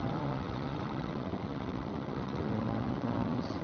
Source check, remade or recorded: remade